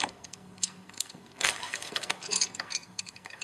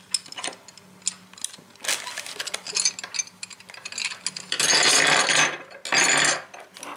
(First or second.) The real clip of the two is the second